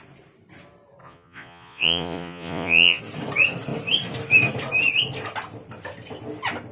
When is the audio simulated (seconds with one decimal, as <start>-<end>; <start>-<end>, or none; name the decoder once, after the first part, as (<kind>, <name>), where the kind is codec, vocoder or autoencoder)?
1.0-3.0 (vocoder, Vocos)